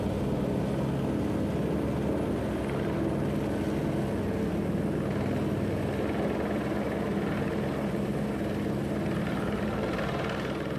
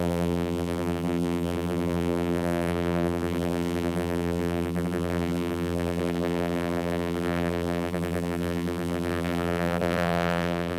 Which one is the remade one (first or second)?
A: second